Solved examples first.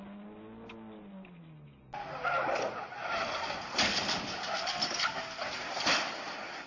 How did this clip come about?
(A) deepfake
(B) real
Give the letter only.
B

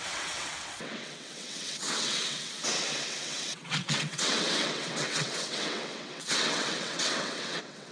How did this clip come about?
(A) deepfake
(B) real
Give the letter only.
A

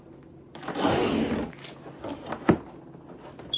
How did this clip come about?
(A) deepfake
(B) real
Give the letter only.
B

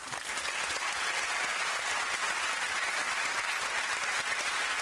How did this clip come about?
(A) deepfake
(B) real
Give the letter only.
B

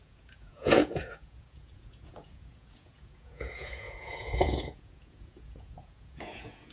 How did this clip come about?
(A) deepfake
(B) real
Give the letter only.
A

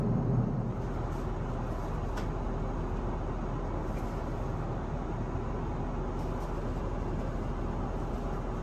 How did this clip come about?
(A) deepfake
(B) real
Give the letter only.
B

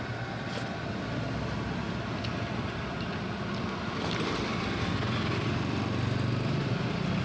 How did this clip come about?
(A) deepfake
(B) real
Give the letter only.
B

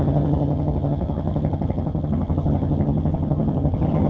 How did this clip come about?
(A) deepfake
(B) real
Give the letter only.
A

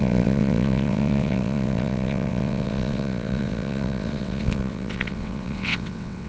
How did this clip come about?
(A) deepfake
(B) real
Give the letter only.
A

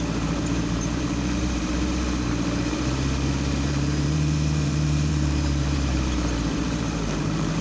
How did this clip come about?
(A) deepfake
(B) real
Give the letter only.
A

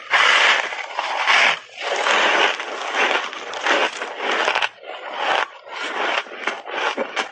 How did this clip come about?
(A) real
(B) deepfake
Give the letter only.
A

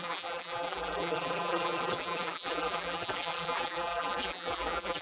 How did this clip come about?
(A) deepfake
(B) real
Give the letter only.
A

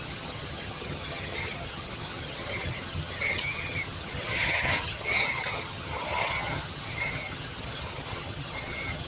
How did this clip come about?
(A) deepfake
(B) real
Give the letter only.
A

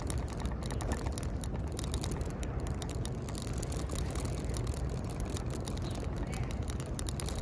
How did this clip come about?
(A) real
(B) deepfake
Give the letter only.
A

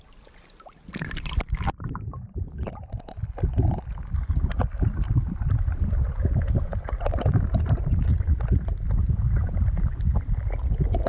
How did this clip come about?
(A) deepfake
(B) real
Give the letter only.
B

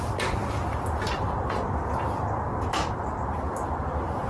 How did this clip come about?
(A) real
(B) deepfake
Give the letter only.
A